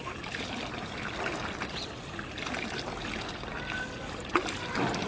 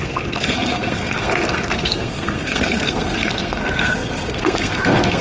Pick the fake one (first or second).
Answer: second